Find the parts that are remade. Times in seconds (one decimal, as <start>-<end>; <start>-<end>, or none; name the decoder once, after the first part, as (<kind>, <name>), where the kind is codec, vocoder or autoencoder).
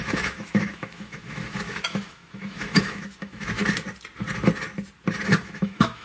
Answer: 0.0-3.6 (autoencoder, DAC-VAE); 5.4-6.0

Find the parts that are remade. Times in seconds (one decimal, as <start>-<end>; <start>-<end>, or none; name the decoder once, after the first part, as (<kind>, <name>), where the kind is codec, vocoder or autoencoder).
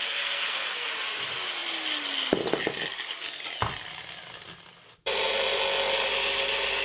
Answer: 0.0-0.9 (codec, SNAC)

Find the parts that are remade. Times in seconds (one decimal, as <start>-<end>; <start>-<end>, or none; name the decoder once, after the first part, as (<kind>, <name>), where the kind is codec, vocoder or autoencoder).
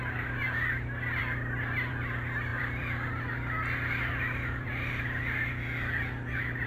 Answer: 2.5-5.5 (vocoder, BigVGAN v2)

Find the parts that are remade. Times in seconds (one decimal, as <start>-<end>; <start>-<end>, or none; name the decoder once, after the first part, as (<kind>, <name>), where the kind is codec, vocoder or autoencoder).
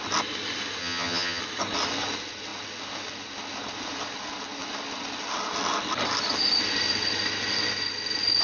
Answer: 0.8-1.4 (vocoder, HiFi-GAN)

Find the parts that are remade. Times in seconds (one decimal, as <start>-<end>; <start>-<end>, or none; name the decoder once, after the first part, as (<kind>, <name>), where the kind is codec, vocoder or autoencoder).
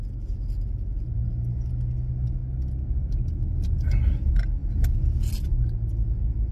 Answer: none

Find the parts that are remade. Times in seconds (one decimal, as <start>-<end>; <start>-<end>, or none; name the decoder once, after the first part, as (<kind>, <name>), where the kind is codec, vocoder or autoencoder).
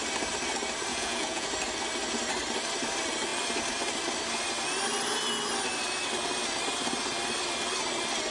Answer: 0.9-1.5 (vocoder, Vocos)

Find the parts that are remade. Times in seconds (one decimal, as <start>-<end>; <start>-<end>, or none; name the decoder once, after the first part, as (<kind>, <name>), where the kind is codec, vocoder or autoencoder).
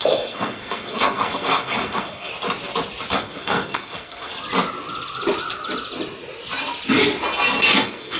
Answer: 0.0-2.3 (codec, SNAC); 3.1-4.3; 7.6-8.2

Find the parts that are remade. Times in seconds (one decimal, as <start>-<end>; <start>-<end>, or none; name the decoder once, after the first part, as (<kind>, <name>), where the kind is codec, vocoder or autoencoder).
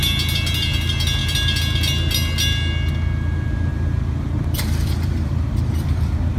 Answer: 3.7-6.4 (vocoder, BigVGAN v2)